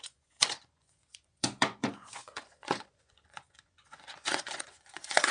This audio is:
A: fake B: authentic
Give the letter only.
A